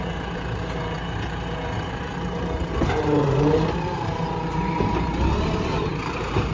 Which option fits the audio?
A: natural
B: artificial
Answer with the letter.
B